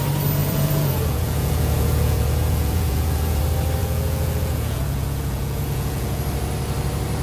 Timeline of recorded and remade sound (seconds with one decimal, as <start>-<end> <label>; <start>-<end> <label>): 0.0-0.4 recorded; 0.4-3.4 remade; 3.4-3.8 recorded; 3.8-6.2 remade; 6.2-7.2 recorded